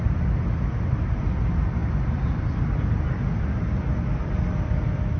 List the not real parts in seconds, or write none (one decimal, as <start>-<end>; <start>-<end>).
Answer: none